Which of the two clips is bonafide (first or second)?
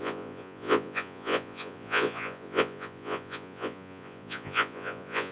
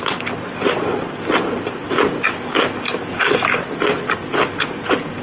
second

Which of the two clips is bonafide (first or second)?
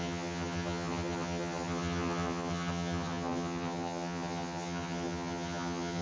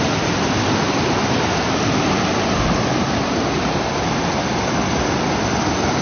second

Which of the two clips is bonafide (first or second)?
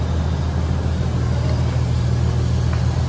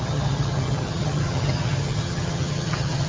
first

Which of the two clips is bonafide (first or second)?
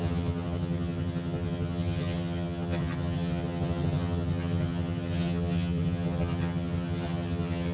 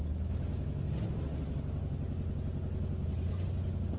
second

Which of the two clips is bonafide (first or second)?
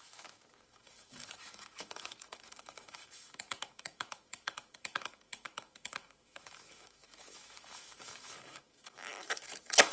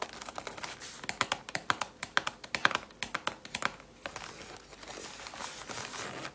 second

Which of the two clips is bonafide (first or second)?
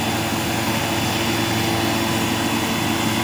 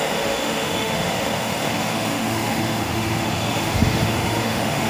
first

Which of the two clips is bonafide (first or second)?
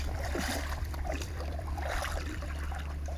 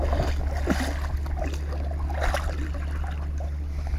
second